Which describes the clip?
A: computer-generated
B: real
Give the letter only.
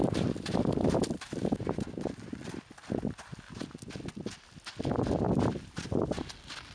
B